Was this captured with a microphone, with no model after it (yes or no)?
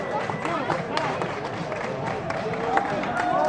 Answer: no